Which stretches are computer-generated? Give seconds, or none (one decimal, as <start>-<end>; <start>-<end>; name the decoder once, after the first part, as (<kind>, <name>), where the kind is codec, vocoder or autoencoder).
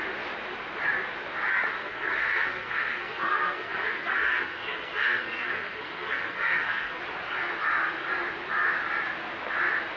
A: 1.8-7.0 (codec, SNAC)